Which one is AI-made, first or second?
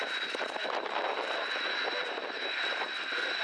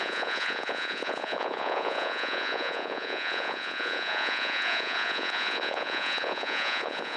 second